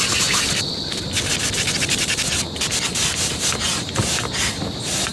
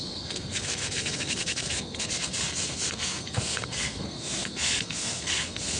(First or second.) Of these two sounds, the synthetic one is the second